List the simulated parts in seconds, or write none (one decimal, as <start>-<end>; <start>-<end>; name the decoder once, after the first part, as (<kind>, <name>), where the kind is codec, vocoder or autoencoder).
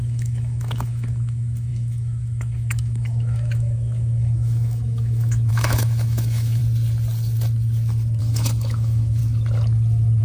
0.0-6.6 (autoencoder, DAC-VAE); 8.2-9.2